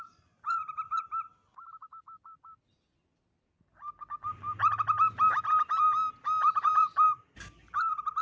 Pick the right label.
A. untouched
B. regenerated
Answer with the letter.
A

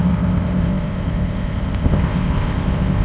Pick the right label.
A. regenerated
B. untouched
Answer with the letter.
A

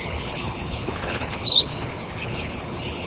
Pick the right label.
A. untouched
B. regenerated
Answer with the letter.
B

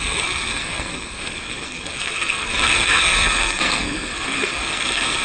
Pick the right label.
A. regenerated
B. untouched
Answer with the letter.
A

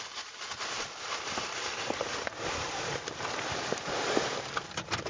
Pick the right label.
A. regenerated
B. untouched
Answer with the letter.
A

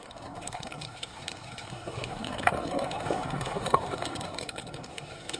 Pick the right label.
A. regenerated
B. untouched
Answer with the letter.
A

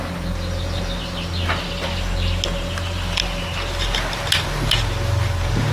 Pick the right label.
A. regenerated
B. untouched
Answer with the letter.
B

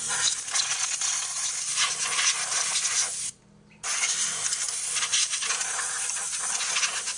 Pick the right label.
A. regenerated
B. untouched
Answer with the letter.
B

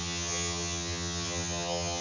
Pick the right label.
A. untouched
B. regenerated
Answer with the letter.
B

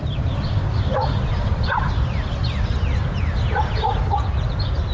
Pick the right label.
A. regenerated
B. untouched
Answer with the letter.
B